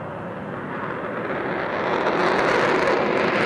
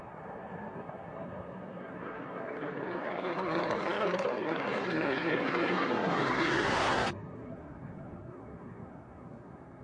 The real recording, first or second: first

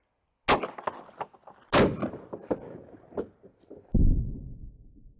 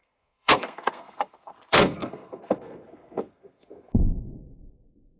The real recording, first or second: first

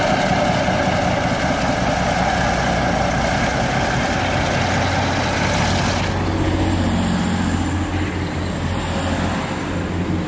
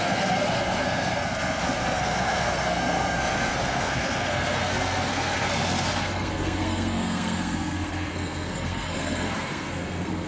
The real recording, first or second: first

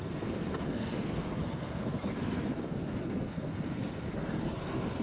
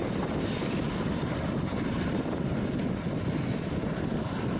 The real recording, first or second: second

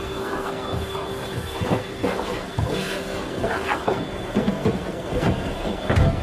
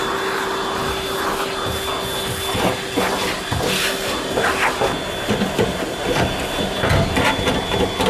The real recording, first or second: second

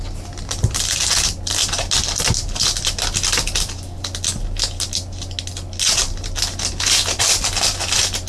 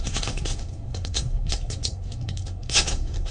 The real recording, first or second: first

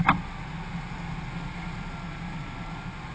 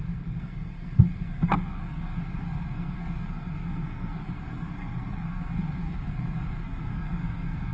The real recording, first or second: first